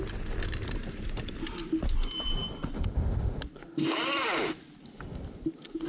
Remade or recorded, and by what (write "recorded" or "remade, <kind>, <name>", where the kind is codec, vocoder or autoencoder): recorded